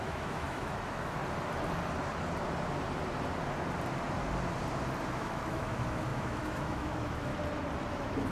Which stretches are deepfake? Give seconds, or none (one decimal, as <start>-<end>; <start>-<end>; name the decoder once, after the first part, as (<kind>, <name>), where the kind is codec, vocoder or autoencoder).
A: 0.0-1.2 (autoencoder, DAC-VAE); 5.1-7.3; 7.9-8.3